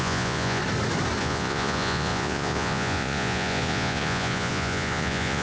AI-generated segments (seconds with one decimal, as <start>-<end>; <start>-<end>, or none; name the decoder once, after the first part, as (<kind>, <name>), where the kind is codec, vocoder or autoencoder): 0.0-0.6 (vocoder, Vocos); 1.2-5.4